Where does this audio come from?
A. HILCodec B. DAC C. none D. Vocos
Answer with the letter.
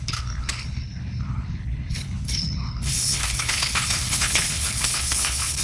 A